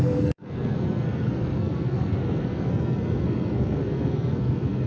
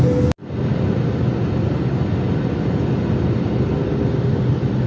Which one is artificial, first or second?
first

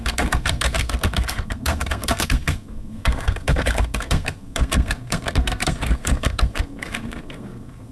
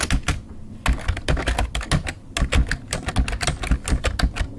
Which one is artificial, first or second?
first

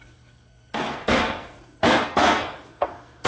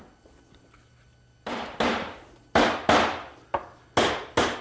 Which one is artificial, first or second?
first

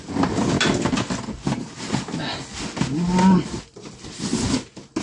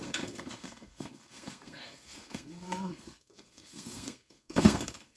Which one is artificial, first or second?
second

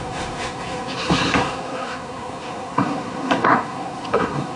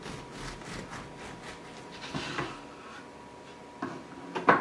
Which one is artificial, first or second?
first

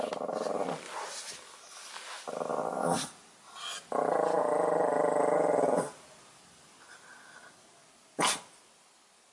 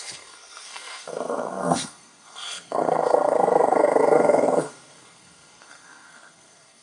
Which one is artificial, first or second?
second